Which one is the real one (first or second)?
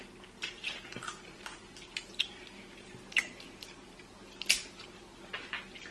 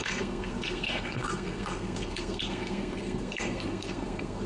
first